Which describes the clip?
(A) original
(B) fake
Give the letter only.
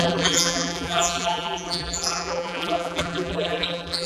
B